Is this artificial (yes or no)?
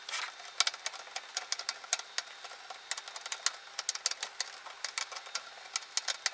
no